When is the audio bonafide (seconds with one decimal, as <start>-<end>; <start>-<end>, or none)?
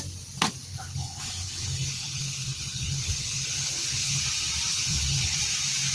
0.0-0.7; 4.2-4.7; 5.4-5.9